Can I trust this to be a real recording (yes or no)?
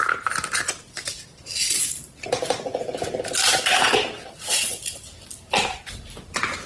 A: yes